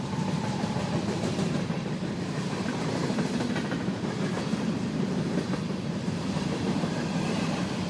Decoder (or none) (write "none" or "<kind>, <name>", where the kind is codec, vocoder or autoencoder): vocoder, BigVGAN v2